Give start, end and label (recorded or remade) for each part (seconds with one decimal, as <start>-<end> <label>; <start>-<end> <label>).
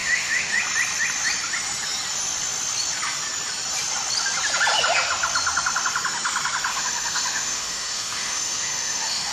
0.0-0.5 remade; 0.5-6.7 recorded; 6.7-9.3 remade